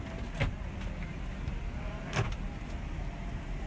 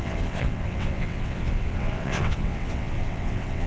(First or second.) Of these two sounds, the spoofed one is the second